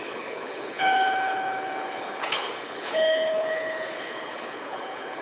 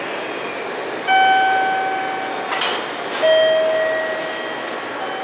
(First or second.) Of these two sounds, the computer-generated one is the first